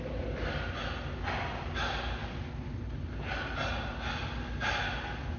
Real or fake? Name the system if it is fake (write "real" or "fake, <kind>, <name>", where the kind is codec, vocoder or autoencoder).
real